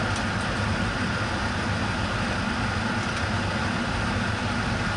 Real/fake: real